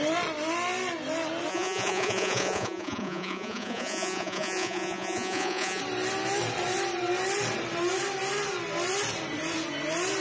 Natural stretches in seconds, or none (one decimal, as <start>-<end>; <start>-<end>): 0.0-1.5; 5.8-10.2